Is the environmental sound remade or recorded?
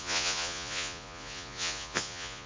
remade